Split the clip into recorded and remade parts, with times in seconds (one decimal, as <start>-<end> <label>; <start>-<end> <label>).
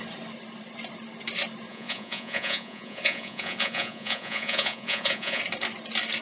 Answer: 0.0-1.7 recorded; 1.7-5.4 remade; 5.4-6.2 recorded